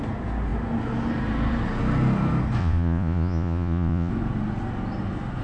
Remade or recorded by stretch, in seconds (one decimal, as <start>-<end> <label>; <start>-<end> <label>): 0.0-2.6 recorded; 2.6-4.1 remade; 4.1-5.4 recorded